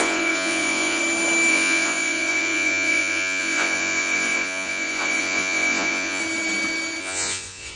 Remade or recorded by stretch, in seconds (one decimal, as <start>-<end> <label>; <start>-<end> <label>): 0.0-1.0 remade; 1.0-1.5 recorded; 1.5-6.2 remade; 6.2-7.0 recorded; 7.0-7.8 remade